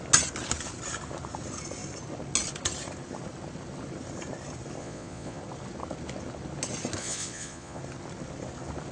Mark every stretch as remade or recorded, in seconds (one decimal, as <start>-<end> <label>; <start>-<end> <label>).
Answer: 0.0-4.8 recorded; 4.8-5.4 remade; 5.4-7.0 recorded; 7.0-7.8 remade; 7.8-8.9 recorded